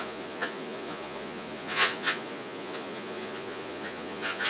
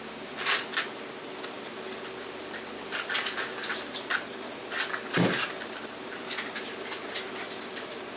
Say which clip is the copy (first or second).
first